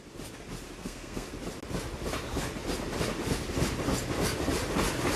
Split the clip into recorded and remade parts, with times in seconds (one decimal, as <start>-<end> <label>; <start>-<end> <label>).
0.0-0.8 recorded; 0.8-1.3 remade; 1.3-5.2 recorded